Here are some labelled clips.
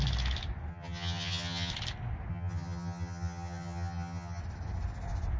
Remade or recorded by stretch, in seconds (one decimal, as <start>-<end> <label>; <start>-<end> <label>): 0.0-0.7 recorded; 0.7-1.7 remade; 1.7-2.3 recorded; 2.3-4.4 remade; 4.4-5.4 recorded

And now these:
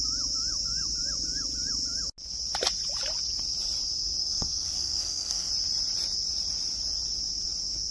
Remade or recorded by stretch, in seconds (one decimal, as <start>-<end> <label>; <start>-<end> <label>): 0.0-4.2 recorded; 4.2-5.5 remade; 5.5-7.9 recorded

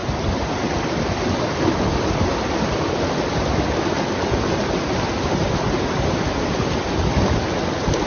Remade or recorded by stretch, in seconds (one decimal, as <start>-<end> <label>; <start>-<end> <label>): 0.0-8.1 recorded

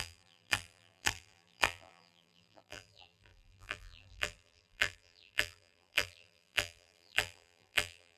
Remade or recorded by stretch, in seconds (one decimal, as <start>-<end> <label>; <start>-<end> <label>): 0.0-8.2 remade